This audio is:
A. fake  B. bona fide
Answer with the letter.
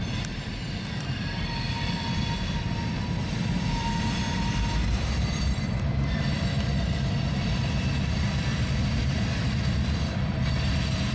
A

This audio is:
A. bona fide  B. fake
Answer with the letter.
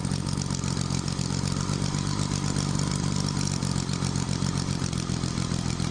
A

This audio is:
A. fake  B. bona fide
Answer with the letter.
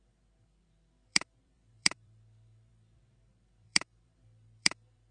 A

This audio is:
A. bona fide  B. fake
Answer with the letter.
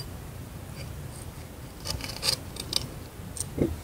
A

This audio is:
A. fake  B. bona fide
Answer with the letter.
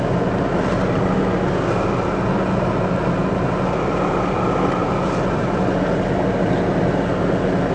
B